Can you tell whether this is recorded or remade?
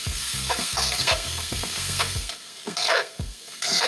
remade